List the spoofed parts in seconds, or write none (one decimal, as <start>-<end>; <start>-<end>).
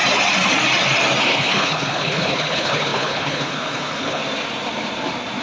1.2-4.2